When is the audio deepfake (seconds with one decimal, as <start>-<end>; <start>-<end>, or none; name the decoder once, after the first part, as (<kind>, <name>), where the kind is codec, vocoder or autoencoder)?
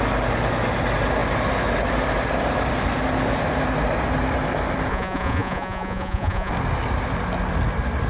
4.9-6.5 (vocoder, Vocos)